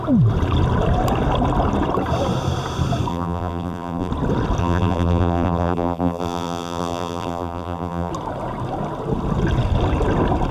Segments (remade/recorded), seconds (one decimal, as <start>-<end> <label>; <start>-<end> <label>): 0.0-3.1 recorded; 3.1-4.1 remade; 4.1-4.6 recorded; 4.6-8.1 remade; 8.1-10.5 recorded